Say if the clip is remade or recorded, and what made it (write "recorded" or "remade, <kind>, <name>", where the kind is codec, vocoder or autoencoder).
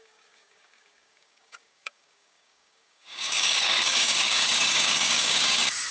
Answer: remade, codec, DAC